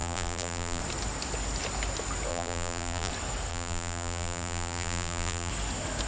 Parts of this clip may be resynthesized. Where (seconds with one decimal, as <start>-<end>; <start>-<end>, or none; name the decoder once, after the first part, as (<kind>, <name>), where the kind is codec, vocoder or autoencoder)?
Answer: 0.0-0.8 (vocoder, BigVGAN v2); 2.3-3.1; 3.5-5.5